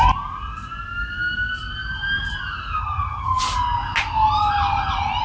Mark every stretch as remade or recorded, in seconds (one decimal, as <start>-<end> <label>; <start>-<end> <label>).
0.0-2.8 recorded; 2.8-3.4 remade; 3.4-5.2 recorded